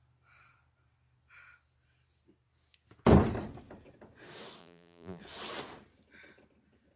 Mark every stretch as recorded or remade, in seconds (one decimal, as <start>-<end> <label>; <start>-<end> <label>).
0.0-4.6 recorded; 4.6-5.2 remade; 5.2-7.0 recorded